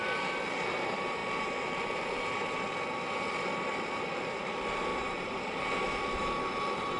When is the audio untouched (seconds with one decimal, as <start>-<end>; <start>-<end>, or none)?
0.0-4.9; 5.6-7.0